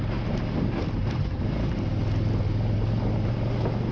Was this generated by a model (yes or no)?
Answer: no